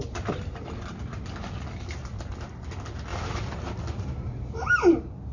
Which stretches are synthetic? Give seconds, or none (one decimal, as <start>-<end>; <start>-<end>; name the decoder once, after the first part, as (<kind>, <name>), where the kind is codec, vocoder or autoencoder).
3.1-4.7 (vocoder, BigVGAN v2)

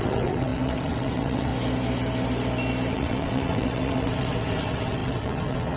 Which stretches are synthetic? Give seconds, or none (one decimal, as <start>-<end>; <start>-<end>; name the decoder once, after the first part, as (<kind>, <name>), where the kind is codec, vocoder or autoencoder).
0.0-1.5 (vocoder, WaveNeXt); 2.9-5.8

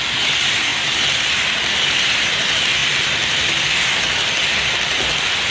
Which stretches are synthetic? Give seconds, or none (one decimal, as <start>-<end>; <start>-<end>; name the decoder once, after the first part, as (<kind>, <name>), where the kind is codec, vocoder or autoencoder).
2.8-4.1 (vocoder, BigVGAN v2)

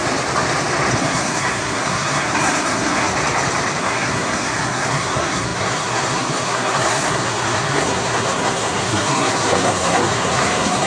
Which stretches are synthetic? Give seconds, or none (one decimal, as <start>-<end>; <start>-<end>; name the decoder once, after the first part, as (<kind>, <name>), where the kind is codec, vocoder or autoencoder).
1.0-3.1 (codec, SNAC); 3.8-10.9

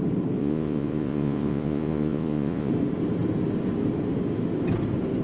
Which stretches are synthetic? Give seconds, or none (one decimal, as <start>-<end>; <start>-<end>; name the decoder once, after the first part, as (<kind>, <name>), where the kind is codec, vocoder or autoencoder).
0.4-2.7 (vocoder, Vocos)

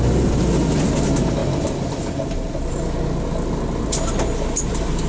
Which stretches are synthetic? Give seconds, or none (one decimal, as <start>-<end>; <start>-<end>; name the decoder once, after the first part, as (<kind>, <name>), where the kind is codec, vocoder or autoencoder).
none

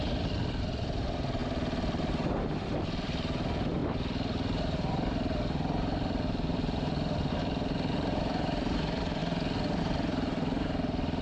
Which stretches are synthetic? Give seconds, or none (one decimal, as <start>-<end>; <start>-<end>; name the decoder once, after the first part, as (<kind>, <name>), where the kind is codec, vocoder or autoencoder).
0.0-9.2 (vocoder, BigVGAN v2); 9.8-11.2